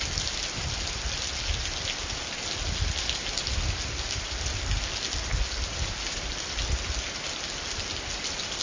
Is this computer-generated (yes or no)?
no